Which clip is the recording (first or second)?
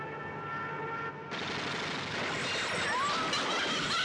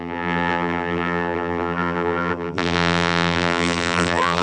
first